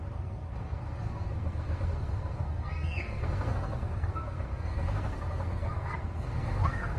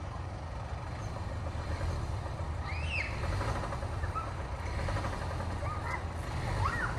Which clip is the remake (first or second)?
first